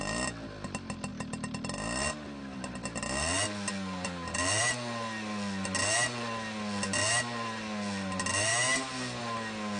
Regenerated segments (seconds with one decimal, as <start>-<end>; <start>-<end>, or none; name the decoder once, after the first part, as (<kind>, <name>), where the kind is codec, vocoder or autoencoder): none